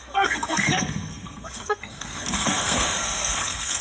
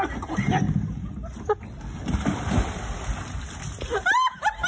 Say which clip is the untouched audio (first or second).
second